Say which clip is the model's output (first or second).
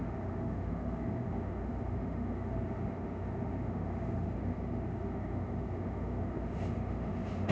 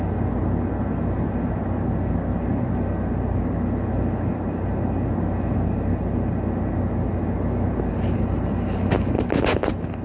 first